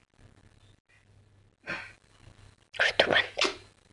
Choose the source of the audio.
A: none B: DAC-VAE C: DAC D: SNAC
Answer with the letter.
A